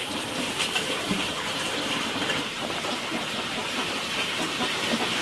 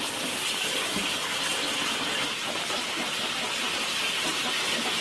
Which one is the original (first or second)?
second